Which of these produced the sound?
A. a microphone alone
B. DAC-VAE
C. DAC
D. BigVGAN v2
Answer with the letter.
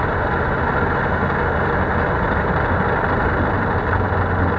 A